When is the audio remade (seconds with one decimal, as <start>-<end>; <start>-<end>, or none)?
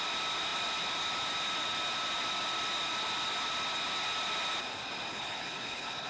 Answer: 5.1-6.1